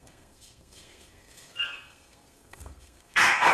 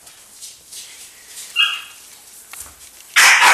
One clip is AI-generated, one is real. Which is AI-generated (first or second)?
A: first